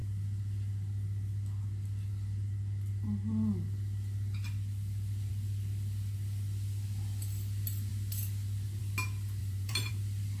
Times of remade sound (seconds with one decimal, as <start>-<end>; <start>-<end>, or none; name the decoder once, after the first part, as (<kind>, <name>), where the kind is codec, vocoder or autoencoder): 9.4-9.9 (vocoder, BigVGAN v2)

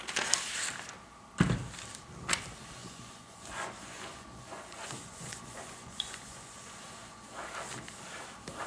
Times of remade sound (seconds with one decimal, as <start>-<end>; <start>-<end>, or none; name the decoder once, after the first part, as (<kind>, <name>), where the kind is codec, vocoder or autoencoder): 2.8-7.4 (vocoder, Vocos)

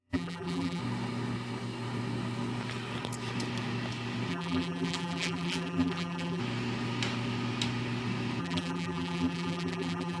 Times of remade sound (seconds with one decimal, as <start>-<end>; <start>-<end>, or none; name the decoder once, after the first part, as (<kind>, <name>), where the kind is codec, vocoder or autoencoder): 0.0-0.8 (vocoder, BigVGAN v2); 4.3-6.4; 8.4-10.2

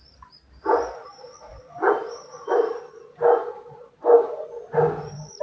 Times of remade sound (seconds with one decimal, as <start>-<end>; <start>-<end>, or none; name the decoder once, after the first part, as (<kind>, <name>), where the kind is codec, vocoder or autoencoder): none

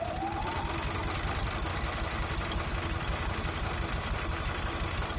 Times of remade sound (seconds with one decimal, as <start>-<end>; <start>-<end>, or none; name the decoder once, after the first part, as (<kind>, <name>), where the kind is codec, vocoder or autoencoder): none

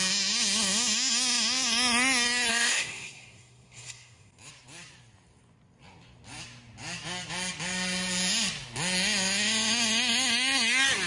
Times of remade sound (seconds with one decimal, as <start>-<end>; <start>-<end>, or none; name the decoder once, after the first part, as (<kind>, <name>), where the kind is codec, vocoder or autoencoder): 2.5-4.3 (codec, SNAC)